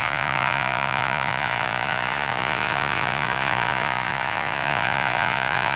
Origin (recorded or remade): remade